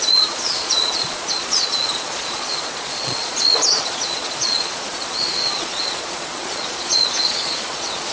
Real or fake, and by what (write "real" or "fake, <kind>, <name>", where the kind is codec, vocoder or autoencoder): fake, vocoder, Vocos